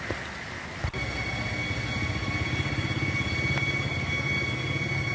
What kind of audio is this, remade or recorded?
recorded